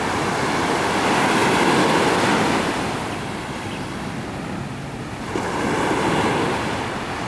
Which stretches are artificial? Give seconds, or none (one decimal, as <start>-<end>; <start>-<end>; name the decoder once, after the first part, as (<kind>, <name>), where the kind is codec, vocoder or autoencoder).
none